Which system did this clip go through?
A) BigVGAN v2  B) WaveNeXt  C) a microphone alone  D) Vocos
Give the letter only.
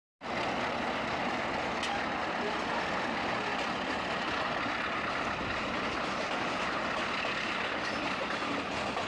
C